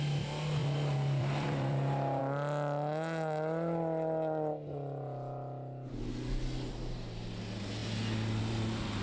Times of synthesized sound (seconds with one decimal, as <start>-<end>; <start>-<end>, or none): 0.6-2.2